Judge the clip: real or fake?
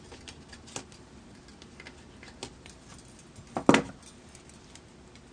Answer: real